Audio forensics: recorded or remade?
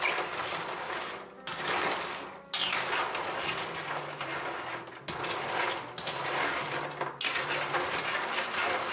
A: recorded